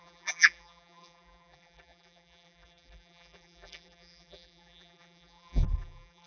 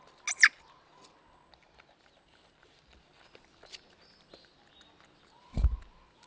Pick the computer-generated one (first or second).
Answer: first